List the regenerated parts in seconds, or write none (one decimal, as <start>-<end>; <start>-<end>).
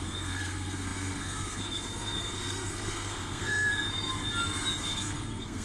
0.0-3.7; 4.8-5.6